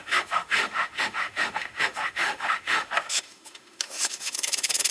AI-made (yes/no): yes